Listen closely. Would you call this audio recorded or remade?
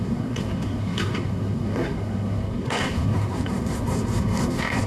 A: remade